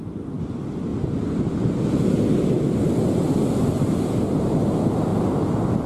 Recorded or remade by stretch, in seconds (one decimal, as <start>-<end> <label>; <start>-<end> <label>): 0.0-5.9 recorded